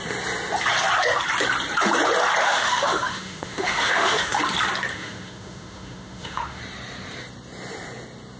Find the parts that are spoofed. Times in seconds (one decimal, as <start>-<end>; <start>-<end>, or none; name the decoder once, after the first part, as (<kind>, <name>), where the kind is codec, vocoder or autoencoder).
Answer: 2.4-4.4 (autoencoder, DAC-VAE); 4.9-6.6